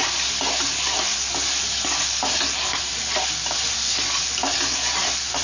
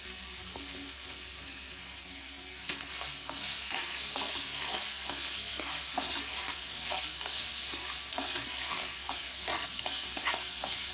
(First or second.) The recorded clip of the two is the first